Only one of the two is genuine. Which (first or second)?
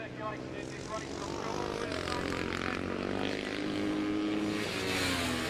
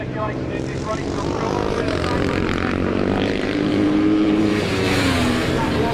first